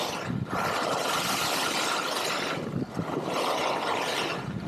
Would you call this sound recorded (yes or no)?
yes